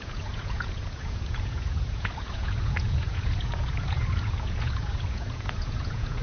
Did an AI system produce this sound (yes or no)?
yes